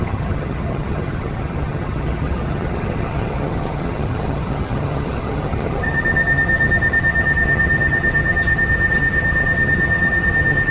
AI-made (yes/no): yes